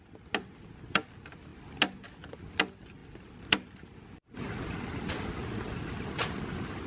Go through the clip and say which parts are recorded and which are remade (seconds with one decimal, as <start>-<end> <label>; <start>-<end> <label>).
0.0-6.9 recorded